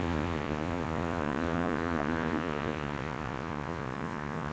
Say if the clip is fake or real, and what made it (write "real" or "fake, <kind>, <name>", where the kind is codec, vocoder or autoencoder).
fake, vocoder, Vocos